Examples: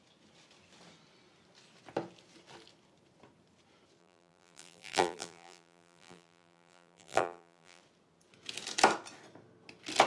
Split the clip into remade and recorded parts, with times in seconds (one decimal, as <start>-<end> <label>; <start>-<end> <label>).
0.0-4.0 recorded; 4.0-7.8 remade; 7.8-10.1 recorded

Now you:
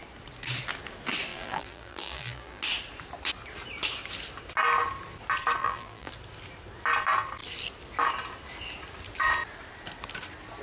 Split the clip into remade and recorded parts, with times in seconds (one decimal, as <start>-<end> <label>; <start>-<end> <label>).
0.0-1.3 recorded; 1.3-2.6 remade; 2.6-5.6 recorded; 5.6-6.1 remade; 6.1-10.6 recorded

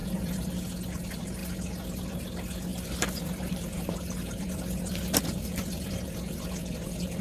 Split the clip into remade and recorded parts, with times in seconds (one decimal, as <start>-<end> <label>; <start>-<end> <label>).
0.0-0.6 remade; 0.6-1.4 recorded; 1.4-2.2 remade; 2.2-2.7 recorded; 2.7-7.2 remade

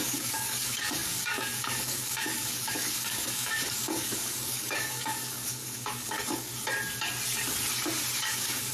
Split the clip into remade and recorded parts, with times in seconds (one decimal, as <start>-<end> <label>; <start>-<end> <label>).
0.0-6.5 remade; 6.5-8.2 recorded; 8.2-8.7 remade